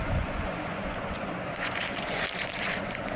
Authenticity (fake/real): fake